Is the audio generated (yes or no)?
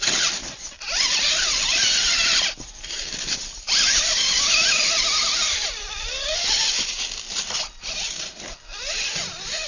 yes